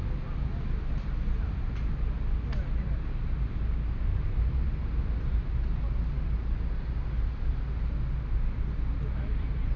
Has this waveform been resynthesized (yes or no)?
no